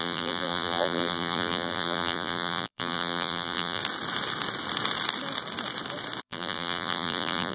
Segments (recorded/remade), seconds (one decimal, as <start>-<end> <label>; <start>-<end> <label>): 0.0-3.8 remade; 3.8-6.2 recorded; 6.2-7.5 remade